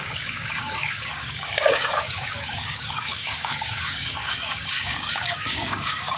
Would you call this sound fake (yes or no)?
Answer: yes